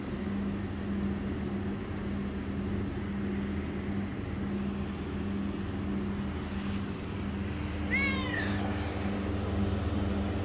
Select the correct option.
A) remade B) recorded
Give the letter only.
B